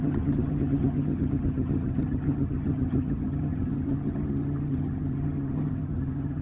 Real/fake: fake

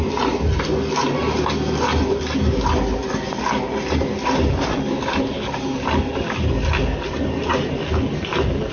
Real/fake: real